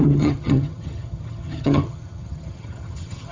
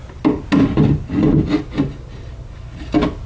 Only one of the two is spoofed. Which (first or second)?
first